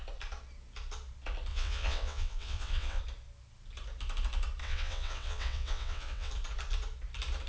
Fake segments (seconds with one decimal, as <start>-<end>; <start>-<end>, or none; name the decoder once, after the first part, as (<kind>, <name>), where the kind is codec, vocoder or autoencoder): 1.5-3.0 (vocoder, WaveNeXt); 4.6-6.3